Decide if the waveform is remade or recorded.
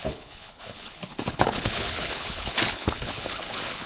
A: remade